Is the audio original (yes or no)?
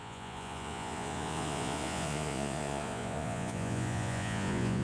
no